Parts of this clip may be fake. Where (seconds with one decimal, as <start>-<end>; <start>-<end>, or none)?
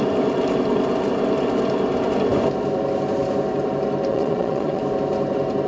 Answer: 4.1-4.8